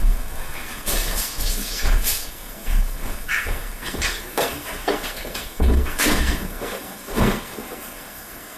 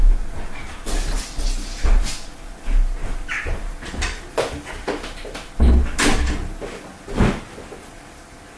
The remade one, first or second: first